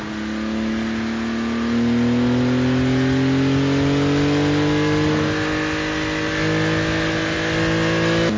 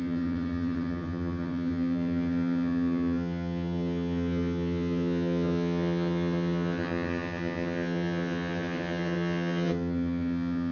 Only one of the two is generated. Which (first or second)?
second